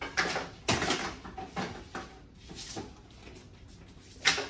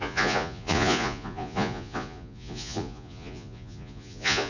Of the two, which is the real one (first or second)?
first